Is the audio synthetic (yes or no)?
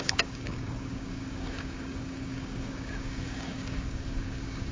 yes